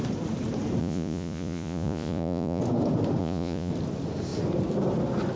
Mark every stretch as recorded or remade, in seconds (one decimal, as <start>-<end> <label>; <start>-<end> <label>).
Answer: 0.0-0.8 recorded; 0.8-2.6 remade; 2.6-3.2 recorded; 3.2-3.7 remade; 3.7-5.4 recorded